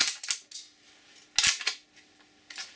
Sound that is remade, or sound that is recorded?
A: recorded